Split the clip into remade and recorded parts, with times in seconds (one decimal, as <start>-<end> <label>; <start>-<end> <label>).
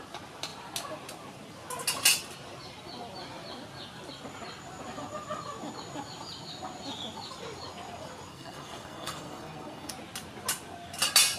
0.0-8.3 recorded; 8.3-9.9 remade; 9.9-11.4 recorded